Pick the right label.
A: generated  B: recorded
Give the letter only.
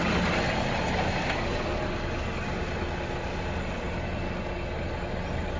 B